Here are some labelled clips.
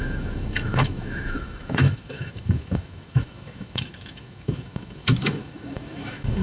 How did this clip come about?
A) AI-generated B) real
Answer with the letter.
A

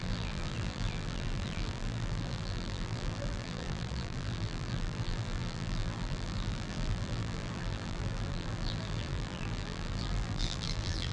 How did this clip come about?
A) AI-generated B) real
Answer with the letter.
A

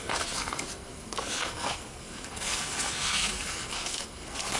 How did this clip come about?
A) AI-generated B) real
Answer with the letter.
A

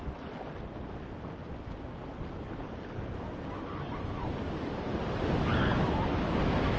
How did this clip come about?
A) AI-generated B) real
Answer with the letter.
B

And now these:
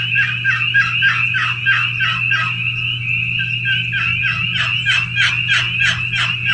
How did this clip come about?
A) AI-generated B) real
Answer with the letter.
B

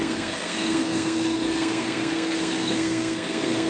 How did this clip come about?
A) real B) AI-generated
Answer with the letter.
B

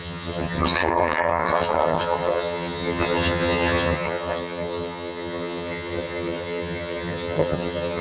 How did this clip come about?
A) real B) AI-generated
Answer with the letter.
B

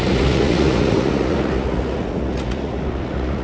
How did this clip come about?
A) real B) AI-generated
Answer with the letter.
B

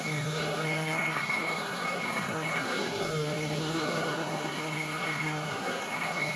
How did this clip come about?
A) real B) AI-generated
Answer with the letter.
B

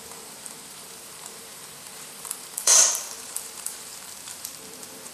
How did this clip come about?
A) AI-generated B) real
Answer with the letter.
A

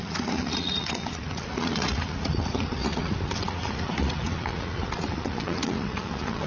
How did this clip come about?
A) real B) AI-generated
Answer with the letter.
B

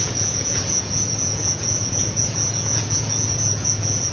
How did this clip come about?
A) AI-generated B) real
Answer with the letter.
A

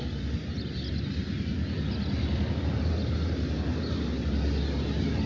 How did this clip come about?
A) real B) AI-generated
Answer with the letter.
A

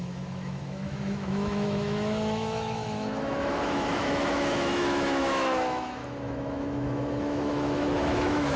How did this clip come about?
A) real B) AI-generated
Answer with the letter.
B